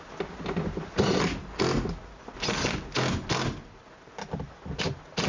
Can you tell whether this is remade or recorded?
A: recorded